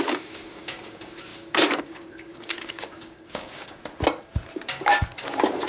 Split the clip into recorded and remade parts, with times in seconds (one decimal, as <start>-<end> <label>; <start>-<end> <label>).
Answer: 0.0-3.8 remade; 3.8-4.7 recorded; 4.7-5.7 remade